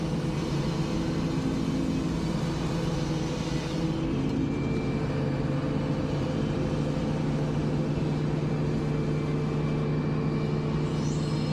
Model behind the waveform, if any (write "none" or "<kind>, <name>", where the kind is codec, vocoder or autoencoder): none